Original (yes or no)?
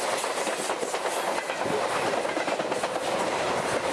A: yes